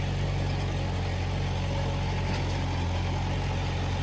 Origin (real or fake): real